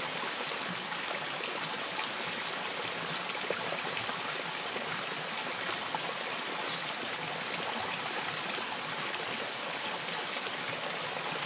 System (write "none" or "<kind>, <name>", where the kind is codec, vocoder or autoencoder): none